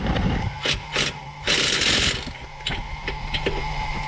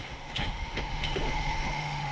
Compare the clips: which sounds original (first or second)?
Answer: first